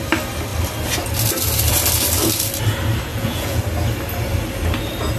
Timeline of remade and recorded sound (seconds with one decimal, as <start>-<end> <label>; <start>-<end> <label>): 0.0-3.1 recorded; 3.1-3.6 remade; 3.6-5.2 recorded